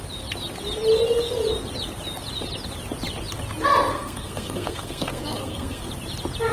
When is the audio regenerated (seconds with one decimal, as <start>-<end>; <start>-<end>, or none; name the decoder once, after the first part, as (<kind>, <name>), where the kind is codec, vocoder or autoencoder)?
3.9-5.9 (codec, SNAC)